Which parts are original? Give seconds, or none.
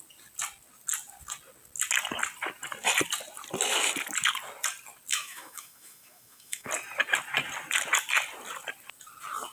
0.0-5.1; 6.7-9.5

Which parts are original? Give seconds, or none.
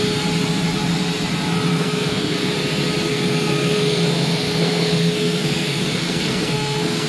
0.0-1.7; 2.5-3.1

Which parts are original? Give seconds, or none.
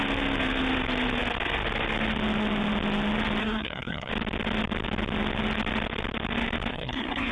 0.0-3.4; 4.1-6.7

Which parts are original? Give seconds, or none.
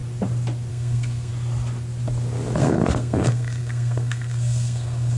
0.0-0.7; 1.3-2.6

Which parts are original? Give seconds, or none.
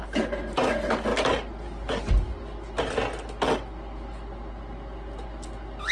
0.0-5.9